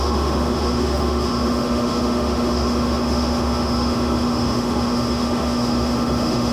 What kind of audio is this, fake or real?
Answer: fake